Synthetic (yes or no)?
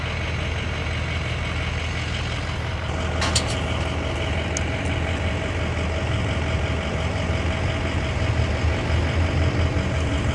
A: no